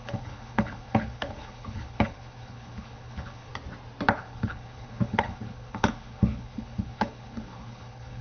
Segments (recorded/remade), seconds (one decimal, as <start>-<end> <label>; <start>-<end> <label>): 0.0-3.5 remade; 3.5-4.2 recorded; 4.2-8.2 remade